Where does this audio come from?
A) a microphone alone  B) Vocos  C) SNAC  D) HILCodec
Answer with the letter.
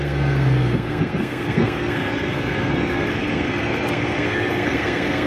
C